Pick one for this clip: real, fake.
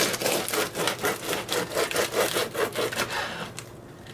real